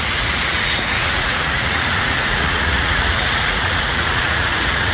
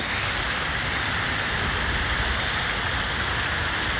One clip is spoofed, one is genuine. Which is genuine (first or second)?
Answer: second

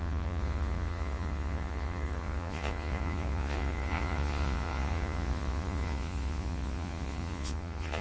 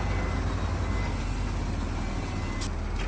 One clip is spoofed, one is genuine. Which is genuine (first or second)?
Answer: second